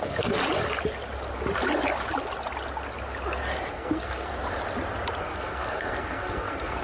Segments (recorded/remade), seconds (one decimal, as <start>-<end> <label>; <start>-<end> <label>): 0.0-0.4 remade; 0.4-3.7 recorded; 3.7-4.3 remade; 4.3-5.2 recorded; 5.2-6.8 remade